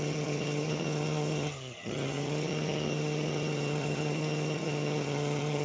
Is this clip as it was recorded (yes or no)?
no